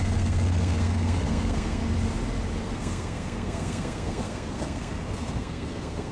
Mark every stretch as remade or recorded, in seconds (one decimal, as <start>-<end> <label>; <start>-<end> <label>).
0.0-1.8 remade; 1.8-2.6 recorded; 2.6-6.1 remade